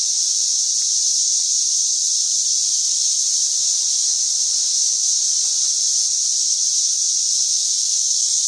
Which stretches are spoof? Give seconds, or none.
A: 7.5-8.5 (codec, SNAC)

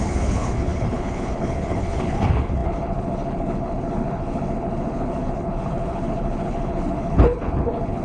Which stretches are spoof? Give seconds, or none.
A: 0.0-8.0 (codec, HILCodec)